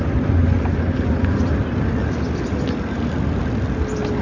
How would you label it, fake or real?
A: real